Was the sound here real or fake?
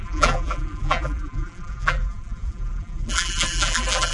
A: fake